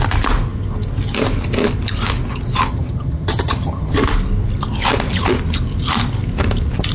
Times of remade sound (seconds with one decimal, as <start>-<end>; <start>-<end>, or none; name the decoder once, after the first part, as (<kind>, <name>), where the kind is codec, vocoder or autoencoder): 2.7-4.0 (vocoder, HiFi-GAN)